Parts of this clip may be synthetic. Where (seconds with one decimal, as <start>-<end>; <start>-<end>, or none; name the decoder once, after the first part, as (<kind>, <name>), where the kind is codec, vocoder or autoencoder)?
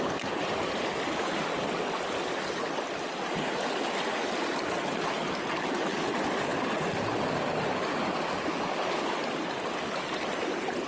none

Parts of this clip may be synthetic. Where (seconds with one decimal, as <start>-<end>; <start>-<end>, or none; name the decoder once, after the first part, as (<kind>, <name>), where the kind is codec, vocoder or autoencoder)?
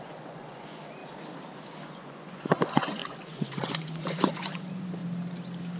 0.0-1.0 (vocoder, Vocos); 1.8-5.0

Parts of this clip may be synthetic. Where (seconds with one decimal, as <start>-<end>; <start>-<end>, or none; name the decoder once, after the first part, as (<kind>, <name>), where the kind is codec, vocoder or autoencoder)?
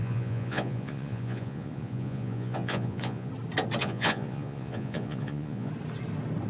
0.0-3.3 (vocoder, Vocos); 3.8-5.7